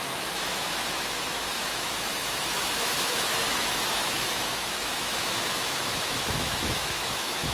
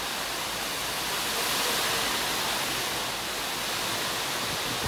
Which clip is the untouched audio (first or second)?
second